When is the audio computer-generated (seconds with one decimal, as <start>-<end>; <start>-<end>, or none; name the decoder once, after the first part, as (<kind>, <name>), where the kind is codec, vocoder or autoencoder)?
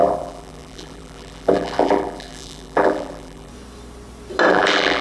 0.0-3.5 (vocoder, BigVGAN v2); 4.5-5.0